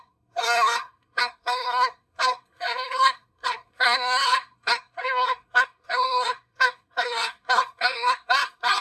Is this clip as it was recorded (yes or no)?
no